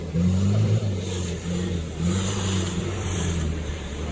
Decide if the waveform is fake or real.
fake